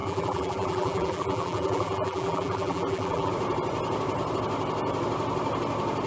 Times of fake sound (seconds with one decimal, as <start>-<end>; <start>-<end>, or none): 0.0-3.3